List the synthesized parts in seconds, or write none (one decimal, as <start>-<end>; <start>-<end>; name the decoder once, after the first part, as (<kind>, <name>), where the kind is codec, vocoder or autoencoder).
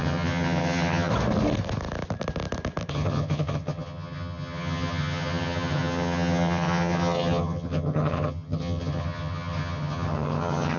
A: 0.0-1.1 (vocoder, HiFi-GAN); 2.9-10.8